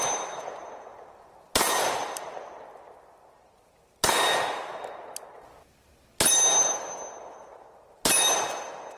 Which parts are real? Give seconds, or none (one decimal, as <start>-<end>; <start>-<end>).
0.0-9.0